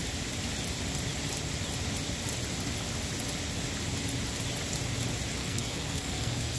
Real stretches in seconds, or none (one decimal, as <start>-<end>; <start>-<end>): 0.0-5.4